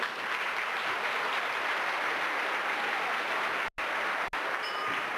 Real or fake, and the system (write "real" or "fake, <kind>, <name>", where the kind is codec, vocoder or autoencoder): real